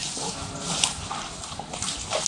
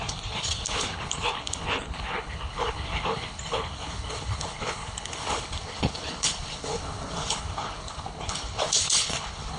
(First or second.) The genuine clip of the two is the first